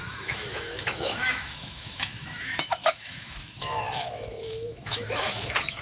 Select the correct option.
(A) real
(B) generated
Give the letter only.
B